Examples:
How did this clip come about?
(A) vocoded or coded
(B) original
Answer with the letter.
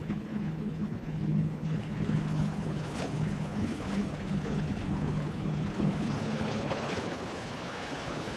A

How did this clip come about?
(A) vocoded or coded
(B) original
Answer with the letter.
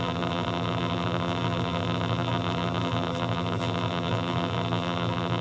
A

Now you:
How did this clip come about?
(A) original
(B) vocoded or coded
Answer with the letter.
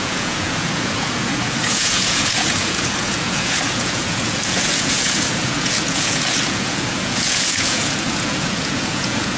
B